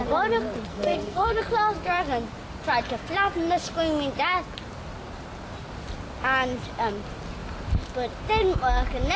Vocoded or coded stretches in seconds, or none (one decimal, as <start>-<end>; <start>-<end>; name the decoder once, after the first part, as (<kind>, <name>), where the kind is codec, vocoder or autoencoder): 0.7-1.4 (codec, SNAC)